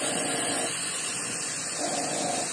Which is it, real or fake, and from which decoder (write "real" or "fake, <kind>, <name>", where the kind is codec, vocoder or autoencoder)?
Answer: fake, vocoder, Vocos